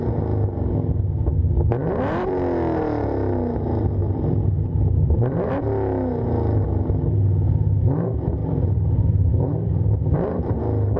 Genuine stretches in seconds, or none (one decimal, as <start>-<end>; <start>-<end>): 0.0-4.0; 5.5-8.4; 10.6-11.0